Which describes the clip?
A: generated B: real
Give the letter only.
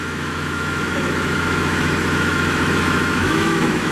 A